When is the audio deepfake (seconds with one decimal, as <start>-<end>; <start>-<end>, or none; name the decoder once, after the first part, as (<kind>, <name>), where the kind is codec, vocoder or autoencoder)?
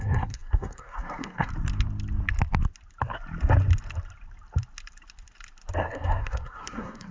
0.0-1.5 (codec, SNAC); 5.8-7.1